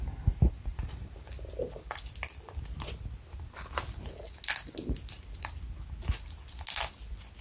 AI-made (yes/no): no